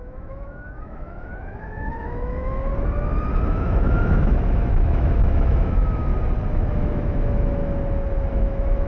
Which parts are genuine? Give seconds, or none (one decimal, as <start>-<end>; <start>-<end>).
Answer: 2.7-3.5; 6.1-6.7; 7.6-8.3